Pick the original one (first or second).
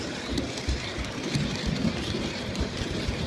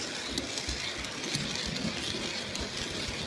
second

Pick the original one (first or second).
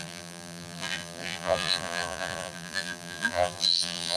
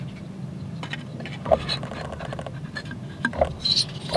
second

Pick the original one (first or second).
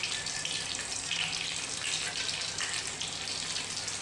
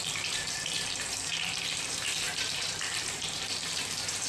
first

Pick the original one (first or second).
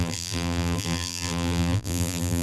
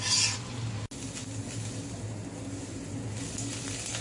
second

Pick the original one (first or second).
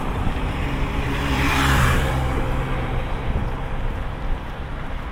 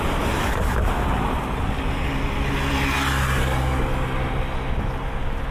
second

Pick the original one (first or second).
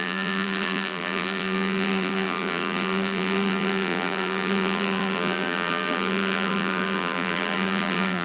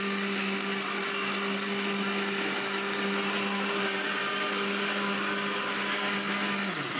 second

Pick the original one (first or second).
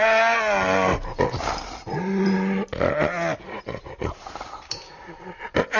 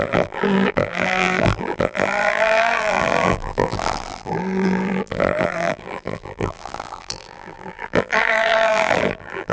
first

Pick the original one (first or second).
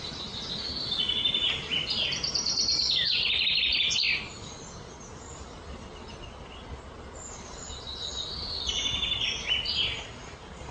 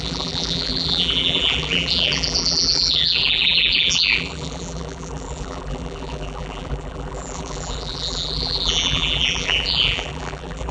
first